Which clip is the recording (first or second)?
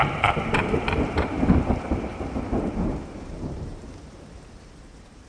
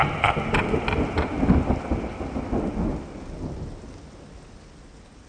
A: second